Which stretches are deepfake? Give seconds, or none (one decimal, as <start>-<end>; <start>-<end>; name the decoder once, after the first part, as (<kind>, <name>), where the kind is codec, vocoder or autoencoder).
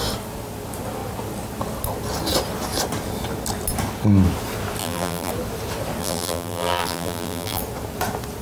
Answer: 4.8-5.3 (vocoder, BigVGAN v2); 6.0-7.6